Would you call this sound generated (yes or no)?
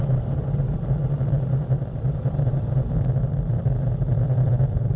yes